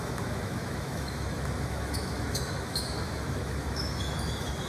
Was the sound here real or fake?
fake